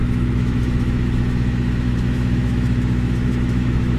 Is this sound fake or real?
fake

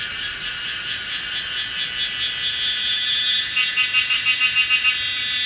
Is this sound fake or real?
real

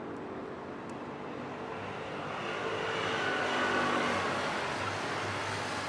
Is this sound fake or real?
real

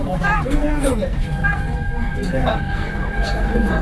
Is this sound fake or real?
fake